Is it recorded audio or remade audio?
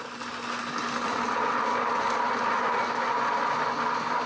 recorded